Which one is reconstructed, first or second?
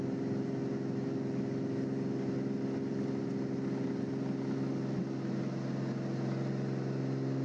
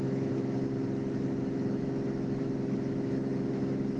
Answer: second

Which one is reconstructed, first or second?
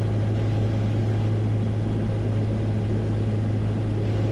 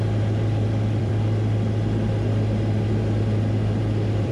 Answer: second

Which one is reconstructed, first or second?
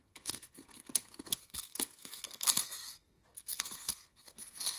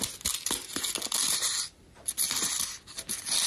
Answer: first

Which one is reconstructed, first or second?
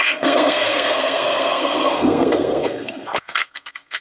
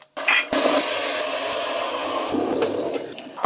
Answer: first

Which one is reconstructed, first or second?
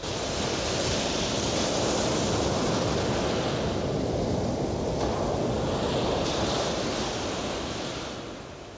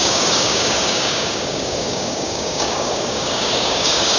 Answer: second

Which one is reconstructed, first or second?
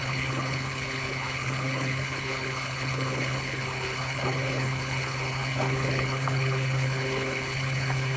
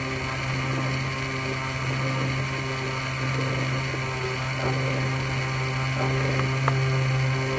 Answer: first